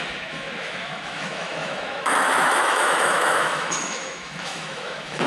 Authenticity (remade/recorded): remade